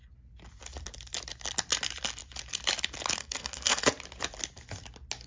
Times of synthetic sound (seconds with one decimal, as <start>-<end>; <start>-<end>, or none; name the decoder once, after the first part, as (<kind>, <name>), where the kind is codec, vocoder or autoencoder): 3.2-3.8 (codec, SNAC)